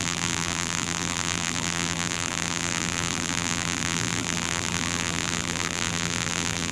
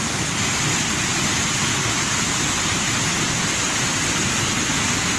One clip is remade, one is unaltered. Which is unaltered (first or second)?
second